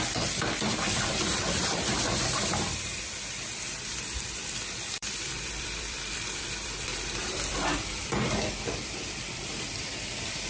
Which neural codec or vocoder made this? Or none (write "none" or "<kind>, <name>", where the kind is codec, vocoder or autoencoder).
vocoder, BigVGAN v2